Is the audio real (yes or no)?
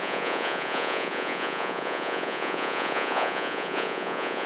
no